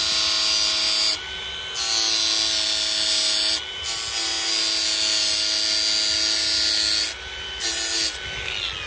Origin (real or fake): real